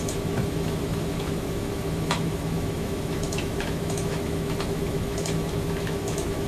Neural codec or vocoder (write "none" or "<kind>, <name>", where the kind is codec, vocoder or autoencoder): autoencoder, DAC-VAE